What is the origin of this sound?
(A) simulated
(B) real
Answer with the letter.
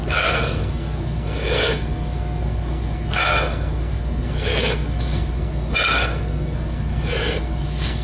A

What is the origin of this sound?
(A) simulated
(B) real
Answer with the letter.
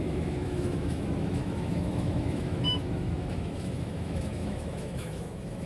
A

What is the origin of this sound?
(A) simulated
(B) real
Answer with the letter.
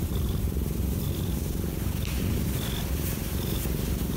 A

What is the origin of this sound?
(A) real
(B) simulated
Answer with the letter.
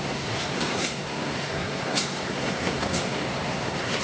B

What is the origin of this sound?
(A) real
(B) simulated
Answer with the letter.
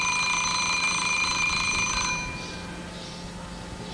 B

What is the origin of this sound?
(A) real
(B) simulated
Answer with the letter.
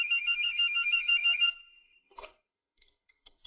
B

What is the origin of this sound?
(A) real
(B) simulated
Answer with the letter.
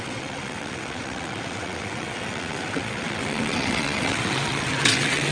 B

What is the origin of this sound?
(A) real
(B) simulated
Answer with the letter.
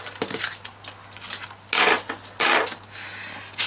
A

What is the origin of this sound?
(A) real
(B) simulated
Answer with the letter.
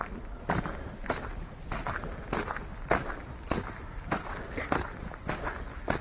A